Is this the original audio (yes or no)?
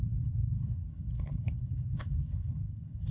no